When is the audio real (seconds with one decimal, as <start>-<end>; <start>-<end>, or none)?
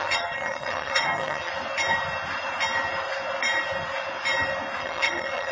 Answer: 1.5-4.8